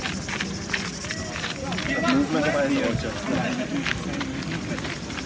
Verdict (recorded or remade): recorded